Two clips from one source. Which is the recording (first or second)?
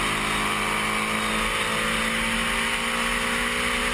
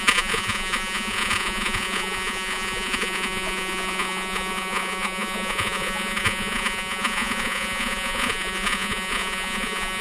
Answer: first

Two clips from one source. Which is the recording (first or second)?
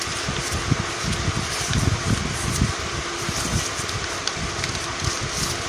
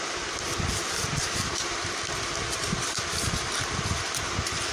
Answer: first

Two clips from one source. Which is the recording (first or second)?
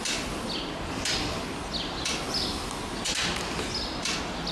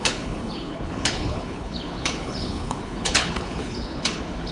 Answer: first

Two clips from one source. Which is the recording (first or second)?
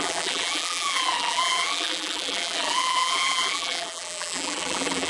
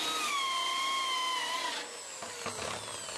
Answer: second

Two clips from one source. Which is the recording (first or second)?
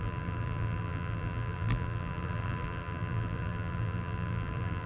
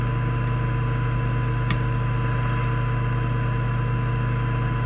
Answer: second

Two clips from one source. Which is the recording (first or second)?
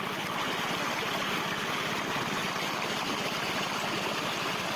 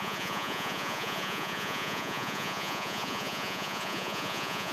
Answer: first